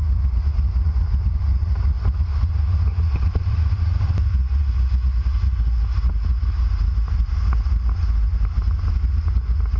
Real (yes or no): yes